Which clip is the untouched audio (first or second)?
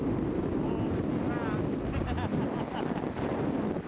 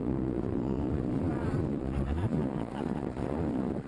first